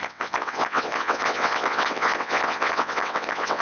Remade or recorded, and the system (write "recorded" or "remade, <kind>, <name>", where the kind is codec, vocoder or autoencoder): remade, vocoder, WaveNeXt